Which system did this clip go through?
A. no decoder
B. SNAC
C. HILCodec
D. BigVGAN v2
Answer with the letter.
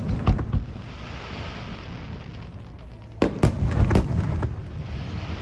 A